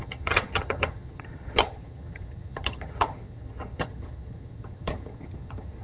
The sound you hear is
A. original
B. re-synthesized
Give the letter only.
B